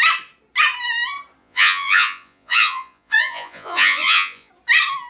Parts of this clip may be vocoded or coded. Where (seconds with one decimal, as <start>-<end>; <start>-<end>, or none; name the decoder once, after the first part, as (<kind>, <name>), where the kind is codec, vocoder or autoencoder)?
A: 1.4-4.5 (vocoder, Vocos)